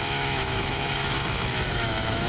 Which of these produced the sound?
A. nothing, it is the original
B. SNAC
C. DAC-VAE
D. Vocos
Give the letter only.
C